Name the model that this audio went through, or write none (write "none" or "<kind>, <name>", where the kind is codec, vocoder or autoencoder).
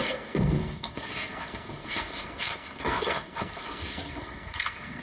codec, SNAC